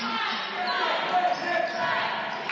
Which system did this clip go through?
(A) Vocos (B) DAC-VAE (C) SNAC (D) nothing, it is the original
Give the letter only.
D